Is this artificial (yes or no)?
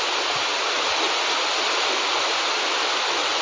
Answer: no